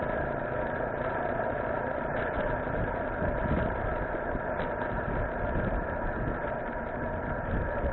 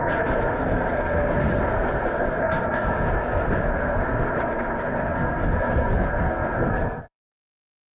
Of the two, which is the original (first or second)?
first